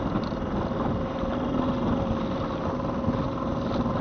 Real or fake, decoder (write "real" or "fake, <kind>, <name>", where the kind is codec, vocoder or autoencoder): real